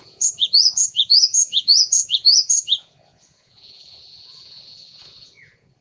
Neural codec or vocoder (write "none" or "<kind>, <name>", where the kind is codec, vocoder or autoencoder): vocoder, Vocos